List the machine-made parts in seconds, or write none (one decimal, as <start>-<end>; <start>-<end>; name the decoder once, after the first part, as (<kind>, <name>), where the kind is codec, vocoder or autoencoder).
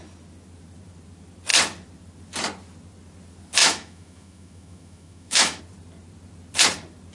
3.6-5.6 (autoencoder, DAC-VAE)